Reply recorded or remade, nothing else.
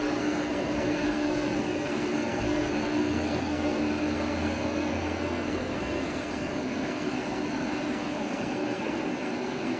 remade